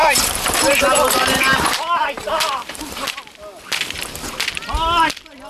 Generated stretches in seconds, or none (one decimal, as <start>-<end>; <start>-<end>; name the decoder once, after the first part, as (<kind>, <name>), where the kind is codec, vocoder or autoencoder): 0.0-3.3 (vocoder, BigVGAN v2)